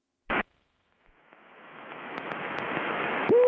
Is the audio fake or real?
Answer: fake